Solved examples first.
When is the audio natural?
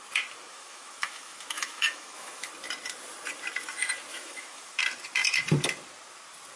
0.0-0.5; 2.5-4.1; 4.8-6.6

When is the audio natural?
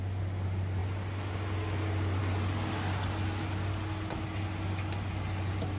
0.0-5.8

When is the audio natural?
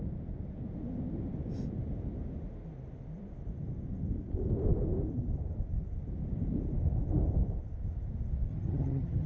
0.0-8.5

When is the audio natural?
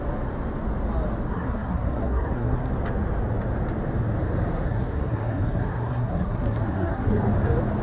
0.0-1.3; 2.7-4.5; 7.2-7.8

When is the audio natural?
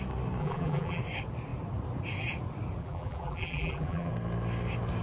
0.0-0.4; 1.0-2.8; 4.1-5.0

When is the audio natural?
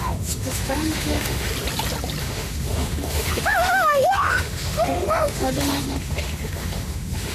1.5-2.2